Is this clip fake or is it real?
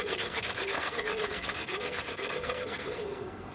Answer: fake